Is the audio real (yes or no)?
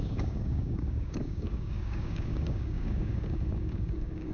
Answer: no